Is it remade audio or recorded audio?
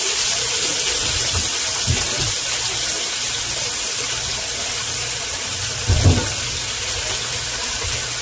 recorded